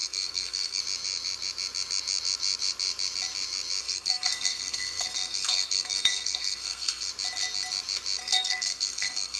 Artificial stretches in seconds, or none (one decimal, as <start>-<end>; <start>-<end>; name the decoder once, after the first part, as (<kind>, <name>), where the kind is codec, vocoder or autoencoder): 0.0-0.8 (codec, SNAC); 3.8-7.1; 8.2-9.4